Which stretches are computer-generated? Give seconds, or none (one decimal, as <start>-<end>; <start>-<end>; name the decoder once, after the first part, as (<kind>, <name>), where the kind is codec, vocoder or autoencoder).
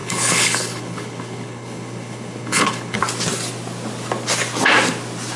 0.0-3.0 (codec, HILCodec)